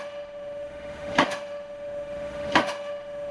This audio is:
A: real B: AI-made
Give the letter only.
B